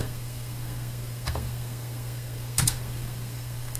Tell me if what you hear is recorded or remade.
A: remade